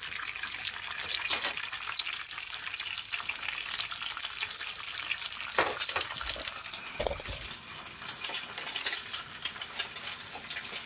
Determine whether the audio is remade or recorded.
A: recorded